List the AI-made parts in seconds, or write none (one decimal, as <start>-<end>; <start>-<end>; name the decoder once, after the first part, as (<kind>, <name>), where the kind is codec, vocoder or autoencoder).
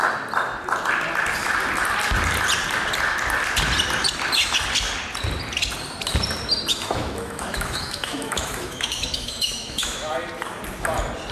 6.7-10.1 (autoencoder, DAC-VAE)